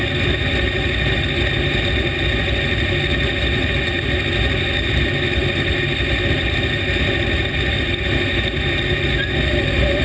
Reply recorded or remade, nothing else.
recorded